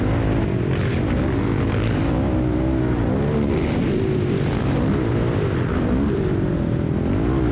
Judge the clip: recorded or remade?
recorded